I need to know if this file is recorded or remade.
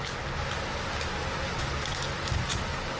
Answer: recorded